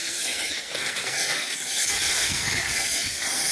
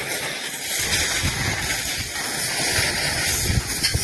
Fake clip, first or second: first